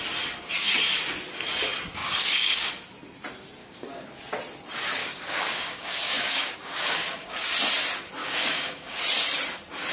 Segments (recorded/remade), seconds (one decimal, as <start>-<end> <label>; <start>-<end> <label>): 0.0-2.0 recorded; 2.0-2.7 remade; 2.7-3.6 recorded; 3.6-4.2 remade; 4.2-5.0 recorded; 5.0-7.5 remade; 7.5-8.2 recorded; 8.2-9.0 remade; 9.0-9.9 recorded